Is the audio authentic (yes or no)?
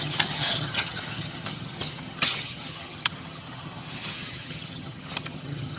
no